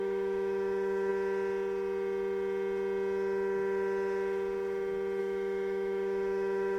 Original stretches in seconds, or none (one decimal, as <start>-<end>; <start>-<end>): 1.1-5.2